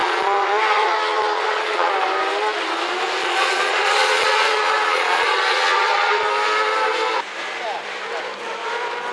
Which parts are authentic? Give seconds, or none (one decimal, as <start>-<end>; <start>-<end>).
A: 1.9-3.2; 6.3-9.1